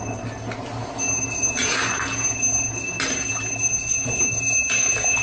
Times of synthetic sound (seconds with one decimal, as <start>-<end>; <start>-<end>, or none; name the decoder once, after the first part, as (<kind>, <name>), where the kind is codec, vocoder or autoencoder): none